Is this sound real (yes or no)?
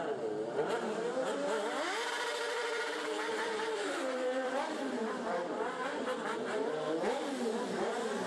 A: no